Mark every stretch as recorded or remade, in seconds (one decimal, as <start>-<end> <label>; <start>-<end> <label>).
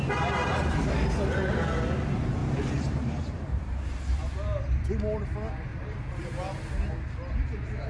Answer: 0.0-0.4 recorded; 0.4-1.5 remade; 1.5-2.4 recorded; 2.4-4.0 remade; 4.0-5.7 recorded; 5.7-6.4 remade; 6.4-7.9 recorded